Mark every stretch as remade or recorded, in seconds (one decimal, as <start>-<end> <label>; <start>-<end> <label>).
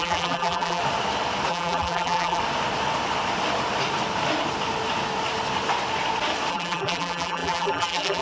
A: 0.0-0.8 remade; 0.8-1.5 recorded; 1.5-2.4 remade; 2.4-6.5 recorded; 6.5-8.2 remade